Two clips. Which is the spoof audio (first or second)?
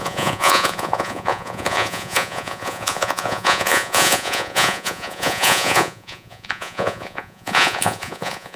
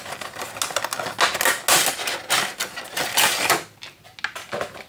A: first